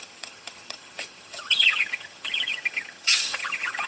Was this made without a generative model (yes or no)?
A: no